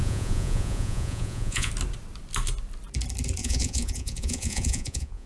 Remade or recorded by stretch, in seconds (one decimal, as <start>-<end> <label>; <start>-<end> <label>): 0.0-1.7 remade; 1.7-3.4 recorded; 3.4-5.3 remade